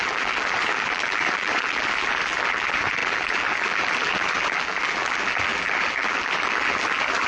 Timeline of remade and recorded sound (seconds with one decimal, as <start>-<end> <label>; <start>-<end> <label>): 0.0-7.3 remade